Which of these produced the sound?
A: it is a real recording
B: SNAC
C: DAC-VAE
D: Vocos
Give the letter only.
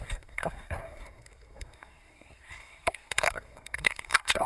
B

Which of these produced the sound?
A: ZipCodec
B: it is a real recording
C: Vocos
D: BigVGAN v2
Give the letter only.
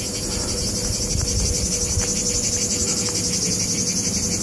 B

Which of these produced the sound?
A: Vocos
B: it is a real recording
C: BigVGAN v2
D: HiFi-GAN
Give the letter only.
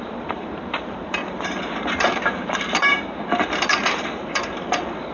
C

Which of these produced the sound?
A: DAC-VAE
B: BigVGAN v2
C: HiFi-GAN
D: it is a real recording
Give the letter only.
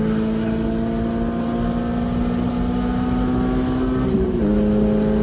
D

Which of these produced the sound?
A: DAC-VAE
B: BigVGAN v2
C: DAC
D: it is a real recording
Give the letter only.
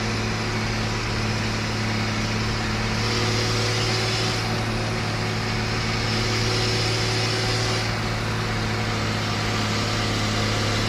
D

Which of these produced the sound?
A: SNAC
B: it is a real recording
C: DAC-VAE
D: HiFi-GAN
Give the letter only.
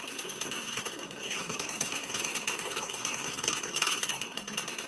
A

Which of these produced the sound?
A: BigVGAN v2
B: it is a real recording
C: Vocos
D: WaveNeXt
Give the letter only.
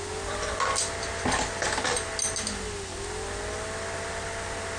B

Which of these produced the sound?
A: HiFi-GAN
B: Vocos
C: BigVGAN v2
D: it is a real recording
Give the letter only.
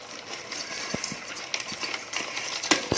D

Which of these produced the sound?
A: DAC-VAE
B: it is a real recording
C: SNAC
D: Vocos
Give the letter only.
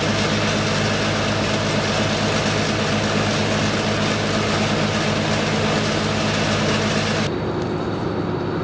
B